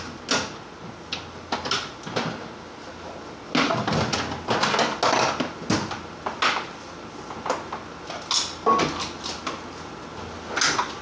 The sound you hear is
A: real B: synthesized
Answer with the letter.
A